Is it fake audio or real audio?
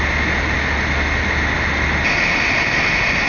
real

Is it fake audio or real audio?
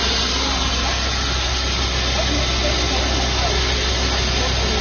real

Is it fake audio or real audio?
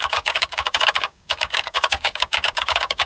fake